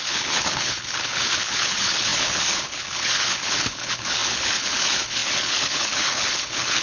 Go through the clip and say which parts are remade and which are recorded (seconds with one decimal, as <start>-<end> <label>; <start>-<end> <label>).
0.0-6.8 remade